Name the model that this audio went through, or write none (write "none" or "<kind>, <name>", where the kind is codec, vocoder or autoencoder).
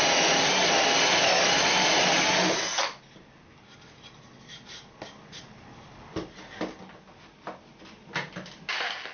none